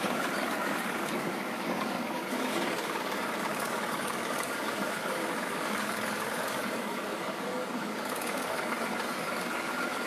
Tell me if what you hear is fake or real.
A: fake